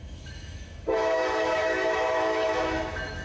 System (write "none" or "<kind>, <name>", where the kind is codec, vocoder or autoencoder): autoencoder, DAC-VAE